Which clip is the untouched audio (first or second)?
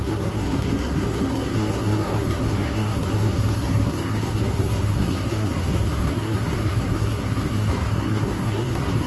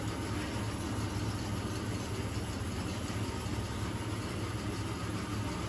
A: second